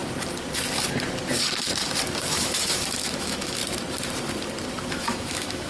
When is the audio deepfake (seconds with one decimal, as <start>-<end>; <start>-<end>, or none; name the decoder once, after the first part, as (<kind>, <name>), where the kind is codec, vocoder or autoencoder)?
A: 2.3-3.6 (autoencoder, DAC-VAE); 4.9-5.7